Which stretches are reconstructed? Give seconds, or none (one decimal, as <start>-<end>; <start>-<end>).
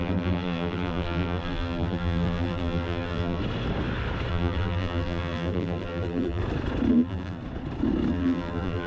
0.0-3.4; 4.3-6.4; 6.9-7.4; 8.1-8.9